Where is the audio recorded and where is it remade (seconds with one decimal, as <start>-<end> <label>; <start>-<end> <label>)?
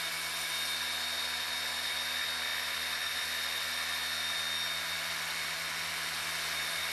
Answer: 0.0-6.9 recorded